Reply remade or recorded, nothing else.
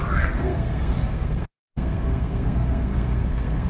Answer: remade